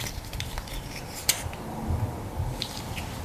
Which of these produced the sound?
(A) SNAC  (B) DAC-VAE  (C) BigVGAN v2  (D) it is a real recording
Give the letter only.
D